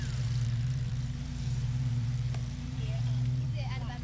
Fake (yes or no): yes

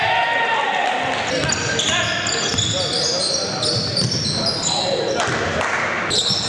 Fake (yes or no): no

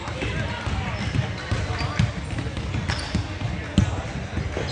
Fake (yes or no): no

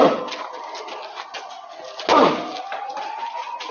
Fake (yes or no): no